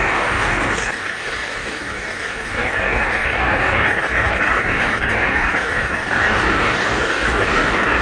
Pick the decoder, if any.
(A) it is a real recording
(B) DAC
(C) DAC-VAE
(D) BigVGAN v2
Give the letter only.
B